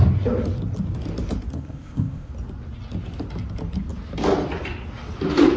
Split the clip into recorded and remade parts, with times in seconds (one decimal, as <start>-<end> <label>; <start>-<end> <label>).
0.0-1.5 recorded; 1.5-2.3 remade; 2.3-5.6 recorded